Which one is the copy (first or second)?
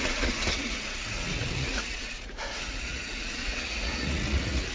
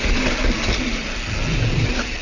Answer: first